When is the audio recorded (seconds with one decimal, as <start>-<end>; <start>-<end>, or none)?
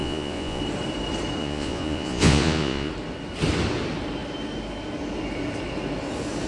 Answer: 0.6-1.4; 2.9-6.5